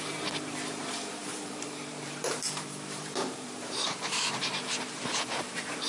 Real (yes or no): no